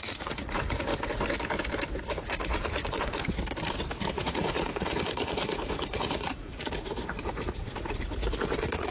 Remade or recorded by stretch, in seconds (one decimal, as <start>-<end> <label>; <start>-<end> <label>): 0.0-0.9 remade; 0.9-2.1 recorded; 2.1-3.2 remade; 3.2-4.1 recorded; 4.1-8.9 remade